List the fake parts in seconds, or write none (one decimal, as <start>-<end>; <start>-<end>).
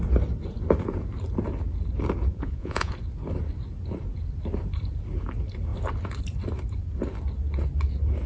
2.3-2.9